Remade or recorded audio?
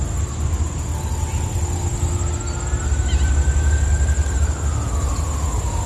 recorded